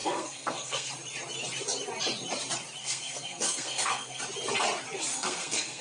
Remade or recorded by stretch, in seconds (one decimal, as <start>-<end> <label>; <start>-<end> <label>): 0.0-0.9 remade; 0.9-2.8 recorded; 2.8-4.2 remade; 4.2-5.1 recorded; 5.1-5.8 remade